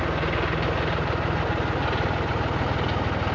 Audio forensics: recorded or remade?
recorded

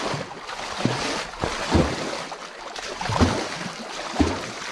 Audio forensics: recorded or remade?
recorded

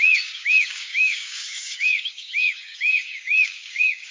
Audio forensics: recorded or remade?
remade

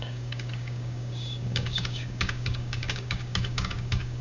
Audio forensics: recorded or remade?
remade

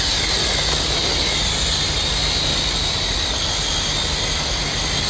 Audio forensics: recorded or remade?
recorded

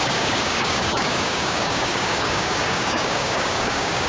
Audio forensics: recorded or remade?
remade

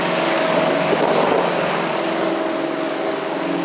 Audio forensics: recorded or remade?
remade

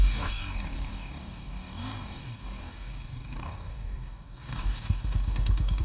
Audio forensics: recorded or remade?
remade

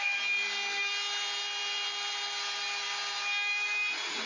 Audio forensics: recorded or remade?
recorded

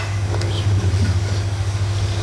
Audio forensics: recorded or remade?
remade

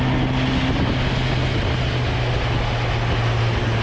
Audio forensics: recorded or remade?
recorded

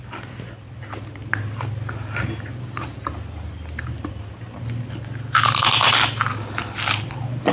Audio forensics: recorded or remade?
recorded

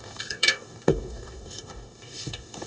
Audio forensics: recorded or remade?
remade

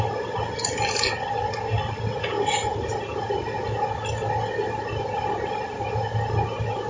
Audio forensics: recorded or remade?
recorded